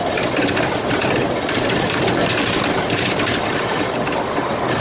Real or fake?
real